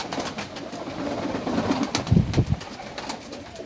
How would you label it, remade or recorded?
recorded